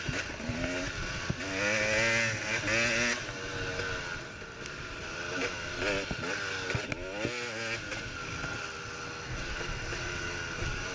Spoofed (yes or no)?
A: no